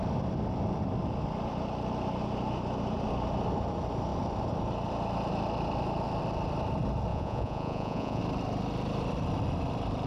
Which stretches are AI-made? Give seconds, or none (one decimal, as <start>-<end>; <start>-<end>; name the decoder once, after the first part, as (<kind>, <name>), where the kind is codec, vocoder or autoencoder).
7.1-8.2 (vocoder, Vocos)